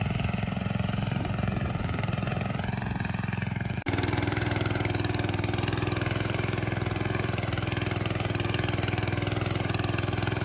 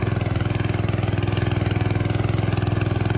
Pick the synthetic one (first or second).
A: first